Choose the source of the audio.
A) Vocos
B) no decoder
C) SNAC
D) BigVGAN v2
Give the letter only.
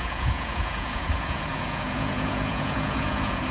A